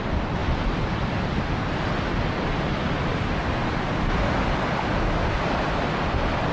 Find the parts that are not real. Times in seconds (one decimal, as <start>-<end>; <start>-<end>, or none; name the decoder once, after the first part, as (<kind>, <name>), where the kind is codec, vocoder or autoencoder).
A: none